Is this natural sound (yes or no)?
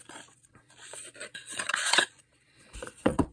no